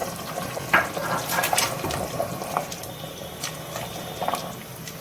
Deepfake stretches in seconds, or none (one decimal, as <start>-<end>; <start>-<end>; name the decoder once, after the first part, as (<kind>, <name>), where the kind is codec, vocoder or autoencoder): 0.0-0.6 (vocoder, BigVGAN v2)